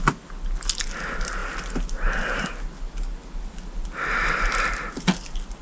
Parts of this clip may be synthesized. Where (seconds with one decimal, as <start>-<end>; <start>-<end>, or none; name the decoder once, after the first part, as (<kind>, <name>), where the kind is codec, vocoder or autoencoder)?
none